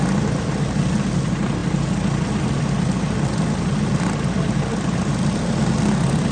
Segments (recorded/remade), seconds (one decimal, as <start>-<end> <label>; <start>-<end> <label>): 0.0-6.3 recorded